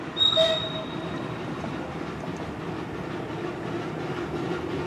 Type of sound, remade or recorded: remade